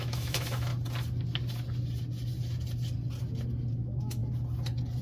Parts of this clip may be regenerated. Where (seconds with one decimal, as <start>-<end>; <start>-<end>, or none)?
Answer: 0.0-0.7; 3.7-4.2